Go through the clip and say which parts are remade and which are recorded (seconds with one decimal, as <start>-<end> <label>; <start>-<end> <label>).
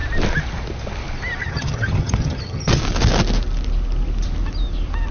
0.0-1.4 recorded; 1.4-2.8 remade; 2.8-5.1 recorded